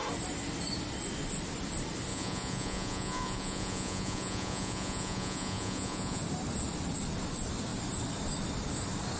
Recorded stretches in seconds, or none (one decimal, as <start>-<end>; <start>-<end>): 0.0-2.1; 6.2-9.2